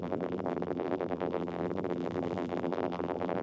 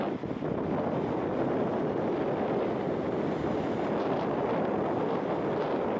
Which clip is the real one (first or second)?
second